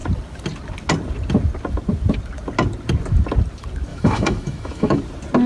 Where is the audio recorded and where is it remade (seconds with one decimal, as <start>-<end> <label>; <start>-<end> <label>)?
0.0-3.9 recorded; 3.9-5.0 remade; 5.0-5.5 recorded